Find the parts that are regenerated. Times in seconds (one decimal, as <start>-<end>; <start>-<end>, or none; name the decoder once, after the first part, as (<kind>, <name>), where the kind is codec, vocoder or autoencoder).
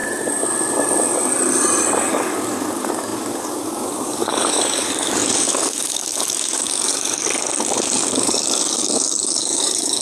2.1-10.0 (codec, DAC)